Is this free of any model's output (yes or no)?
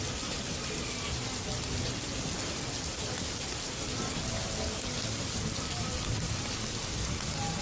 yes